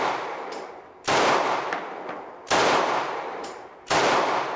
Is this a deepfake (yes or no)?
yes